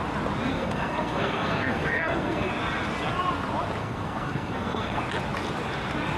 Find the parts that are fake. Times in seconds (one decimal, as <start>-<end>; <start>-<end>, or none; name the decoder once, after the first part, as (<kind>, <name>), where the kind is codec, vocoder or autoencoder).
0.5-2.5 (codec, SNAC); 3.8-5.0